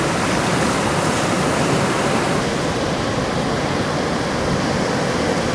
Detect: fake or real real